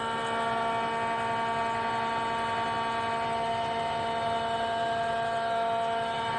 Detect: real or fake real